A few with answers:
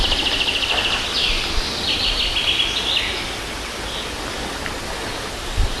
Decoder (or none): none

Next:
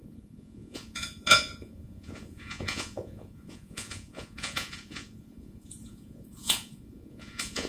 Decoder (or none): vocoder, Vocos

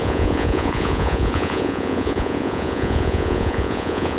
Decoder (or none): vocoder, Vocos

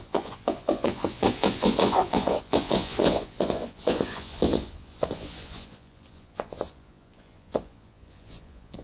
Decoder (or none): vocoder, Vocos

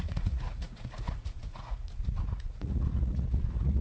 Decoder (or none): vocoder, Vocos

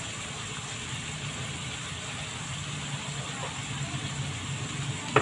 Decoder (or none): none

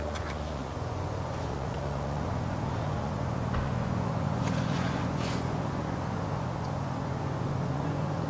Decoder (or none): vocoder, Vocos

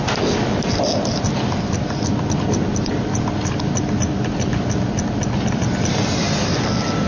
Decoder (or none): none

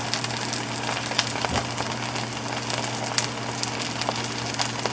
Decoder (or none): none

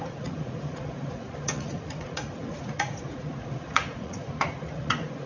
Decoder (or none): vocoder, Vocos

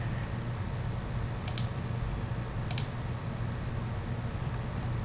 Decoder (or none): none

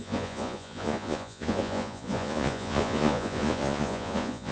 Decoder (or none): vocoder, Vocos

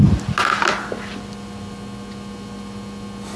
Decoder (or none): none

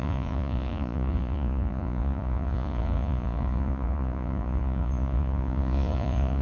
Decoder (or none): vocoder, Vocos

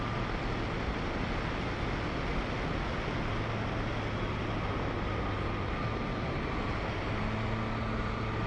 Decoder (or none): none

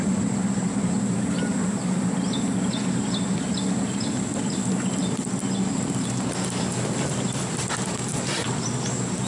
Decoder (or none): none